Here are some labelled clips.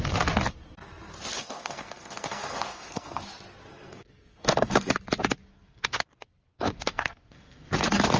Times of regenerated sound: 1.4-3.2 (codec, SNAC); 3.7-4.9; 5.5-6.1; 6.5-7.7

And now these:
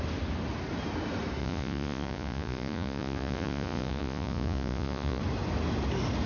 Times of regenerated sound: 1.4-5.2 (vocoder, Vocos)

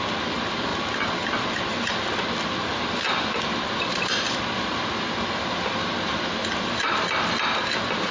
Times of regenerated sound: 0.7-2.2 (vocoder, BigVGAN v2); 2.7-7.2

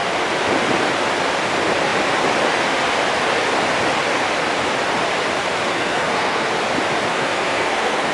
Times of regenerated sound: 5.7-6.5 (codec, SNAC); 7.1-8.1